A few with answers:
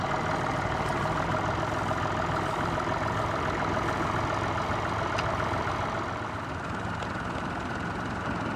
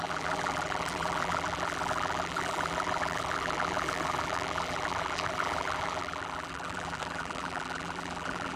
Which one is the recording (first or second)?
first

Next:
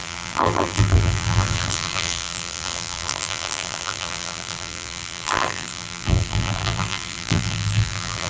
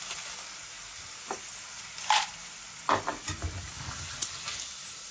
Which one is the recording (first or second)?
second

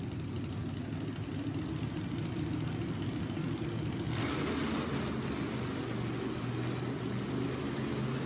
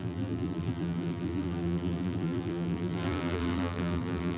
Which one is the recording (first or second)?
first